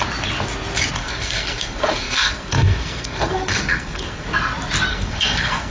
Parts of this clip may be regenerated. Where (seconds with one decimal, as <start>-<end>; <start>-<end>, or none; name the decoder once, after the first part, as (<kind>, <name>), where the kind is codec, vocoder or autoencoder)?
1.0-4.3 (codec, SNAC); 4.9-5.7